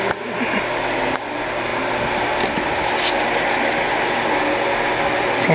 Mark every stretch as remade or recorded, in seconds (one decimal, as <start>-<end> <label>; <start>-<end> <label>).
0.0-5.5 recorded